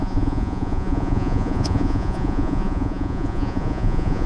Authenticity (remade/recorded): remade